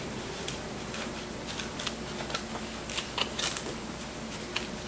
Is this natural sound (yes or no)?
yes